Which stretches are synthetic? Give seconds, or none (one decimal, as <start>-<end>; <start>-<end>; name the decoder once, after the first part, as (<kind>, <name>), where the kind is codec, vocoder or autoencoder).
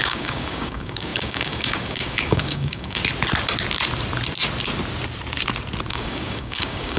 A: 0.0-3.0 (codec, DAC); 5.9-7.0